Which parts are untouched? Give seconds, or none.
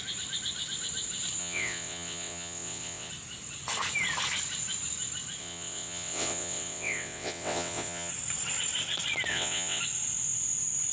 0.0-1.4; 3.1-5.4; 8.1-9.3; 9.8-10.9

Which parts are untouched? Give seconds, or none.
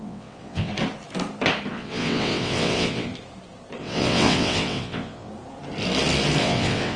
0.7-1.7; 3.1-3.8; 5.3-6.4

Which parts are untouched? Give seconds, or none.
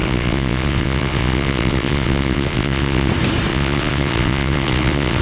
3.1-3.5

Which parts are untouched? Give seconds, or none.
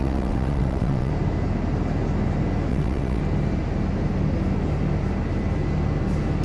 1.1-2.7; 3.2-6.4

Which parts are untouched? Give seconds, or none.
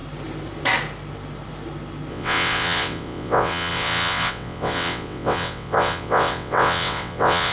0.0-2.1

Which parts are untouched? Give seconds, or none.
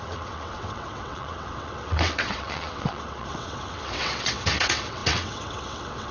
none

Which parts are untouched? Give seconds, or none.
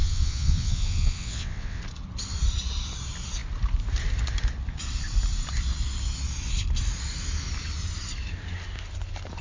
1.8-9.4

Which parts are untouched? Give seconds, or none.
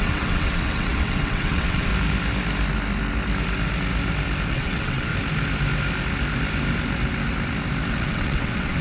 1.9-4.5; 5.1-7.9